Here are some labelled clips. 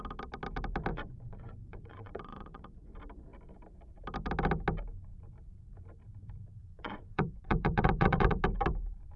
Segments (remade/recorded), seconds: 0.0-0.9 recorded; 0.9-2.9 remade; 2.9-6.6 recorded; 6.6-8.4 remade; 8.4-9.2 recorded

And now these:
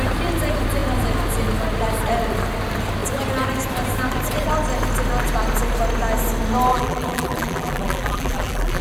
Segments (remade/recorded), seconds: 0.0-6.7 recorded; 6.7-8.8 remade

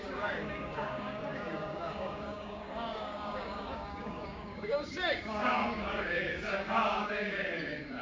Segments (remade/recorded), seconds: 0.0-8.0 remade

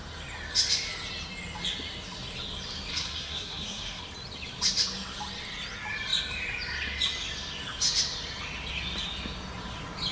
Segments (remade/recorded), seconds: 0.0-2.9 recorded; 2.9-4.0 remade; 4.0-10.1 recorded

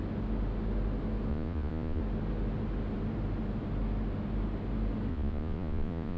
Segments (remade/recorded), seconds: 0.0-1.3 recorded; 1.3-2.0 remade; 2.0-5.1 recorded; 5.1-6.2 remade

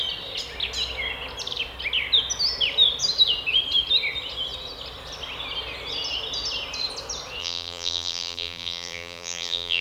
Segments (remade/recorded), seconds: 0.0-7.4 recorded; 7.4-9.8 remade

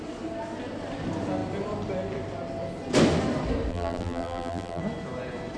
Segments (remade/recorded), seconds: 0.0-3.7 recorded; 3.7-4.8 remade; 4.8-5.6 recorded

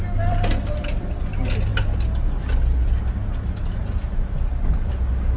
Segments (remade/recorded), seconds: 0.0-5.4 recorded